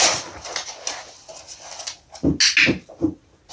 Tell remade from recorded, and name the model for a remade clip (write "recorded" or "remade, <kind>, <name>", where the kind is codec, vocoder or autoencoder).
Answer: recorded